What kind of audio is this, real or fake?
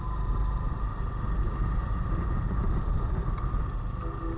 real